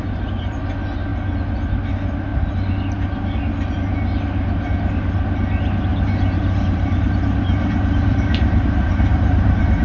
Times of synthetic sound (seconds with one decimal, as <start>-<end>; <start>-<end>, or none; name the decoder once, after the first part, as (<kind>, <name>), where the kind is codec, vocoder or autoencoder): 5.9-9.8 (vocoder, BigVGAN v2)